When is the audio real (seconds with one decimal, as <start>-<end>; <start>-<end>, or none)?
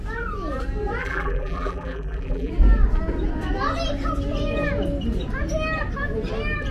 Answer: 0.0-1.0; 2.5-6.7